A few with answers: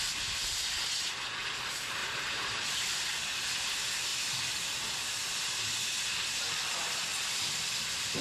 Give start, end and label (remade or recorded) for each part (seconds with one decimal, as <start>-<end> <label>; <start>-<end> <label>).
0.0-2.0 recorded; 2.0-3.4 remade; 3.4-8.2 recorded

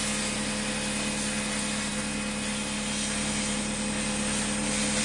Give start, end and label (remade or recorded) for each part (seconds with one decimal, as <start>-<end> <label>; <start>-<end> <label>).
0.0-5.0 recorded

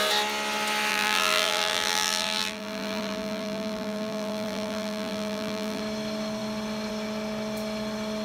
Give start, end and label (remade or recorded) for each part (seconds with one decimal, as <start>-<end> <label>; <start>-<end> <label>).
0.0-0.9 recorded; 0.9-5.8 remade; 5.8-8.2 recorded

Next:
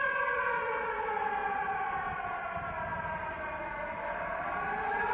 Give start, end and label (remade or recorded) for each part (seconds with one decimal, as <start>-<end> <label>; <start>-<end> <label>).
0.0-5.1 recorded

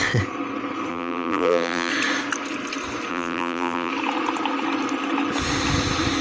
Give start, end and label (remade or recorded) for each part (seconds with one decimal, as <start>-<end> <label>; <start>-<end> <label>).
0.0-0.9 recorded; 0.9-1.9 remade; 1.9-3.1 recorded; 3.1-3.9 remade; 3.9-6.2 recorded

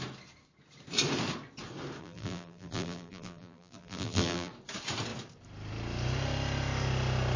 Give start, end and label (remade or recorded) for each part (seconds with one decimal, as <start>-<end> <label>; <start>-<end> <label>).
0.0-2.0 recorded; 2.0-4.5 remade; 4.5-7.4 recorded